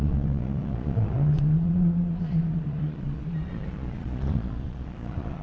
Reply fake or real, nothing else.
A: fake